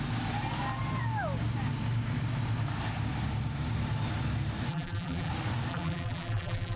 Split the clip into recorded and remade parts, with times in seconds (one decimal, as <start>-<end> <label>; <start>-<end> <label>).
0.0-4.7 recorded; 4.7-5.3 remade; 5.3-5.7 recorded; 5.7-6.8 remade